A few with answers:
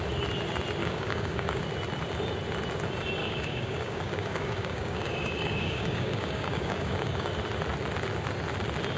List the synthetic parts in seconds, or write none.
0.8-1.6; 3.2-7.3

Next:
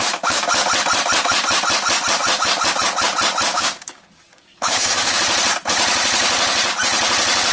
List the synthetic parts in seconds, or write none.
3.5-5.2

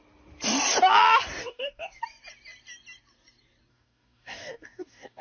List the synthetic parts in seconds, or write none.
1.4-2.0; 3.7-5.2